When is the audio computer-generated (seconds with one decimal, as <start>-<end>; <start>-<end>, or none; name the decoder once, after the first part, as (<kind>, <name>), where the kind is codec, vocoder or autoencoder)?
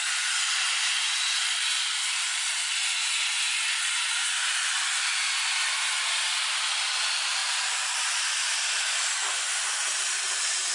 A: 1.4-2.7 (vocoder, BigVGAN v2); 7.4-7.9